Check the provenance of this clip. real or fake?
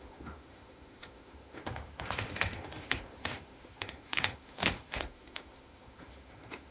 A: fake